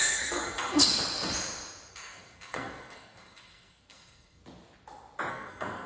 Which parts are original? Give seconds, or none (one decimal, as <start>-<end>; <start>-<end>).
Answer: 0.8-1.9; 4.4-5.3